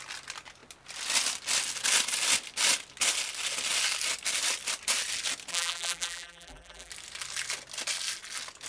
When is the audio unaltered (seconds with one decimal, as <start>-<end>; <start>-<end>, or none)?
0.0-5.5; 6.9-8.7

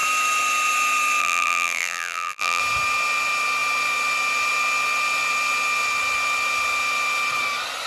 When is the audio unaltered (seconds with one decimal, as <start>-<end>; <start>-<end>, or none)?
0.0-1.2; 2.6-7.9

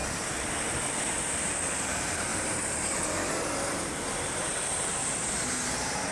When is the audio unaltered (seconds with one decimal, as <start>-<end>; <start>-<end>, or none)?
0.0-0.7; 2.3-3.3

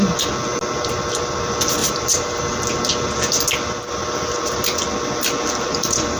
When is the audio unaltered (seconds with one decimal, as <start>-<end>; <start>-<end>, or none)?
0.0-1.8; 2.4-6.2

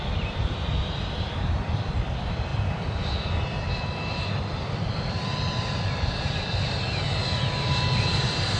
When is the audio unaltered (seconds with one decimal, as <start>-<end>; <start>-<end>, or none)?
1.3-2.5; 7.0-8.6